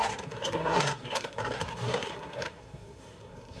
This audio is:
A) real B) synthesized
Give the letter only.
B